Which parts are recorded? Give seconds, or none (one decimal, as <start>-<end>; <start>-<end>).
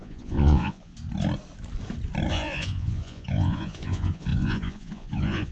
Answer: 0.9-2.3